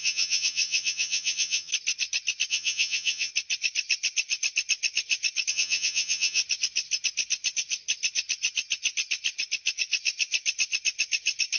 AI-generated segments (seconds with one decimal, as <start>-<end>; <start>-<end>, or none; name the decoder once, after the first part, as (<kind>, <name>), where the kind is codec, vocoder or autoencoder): 0.0-1.7 (vocoder, HiFi-GAN); 2.5-3.3; 5.5-6.4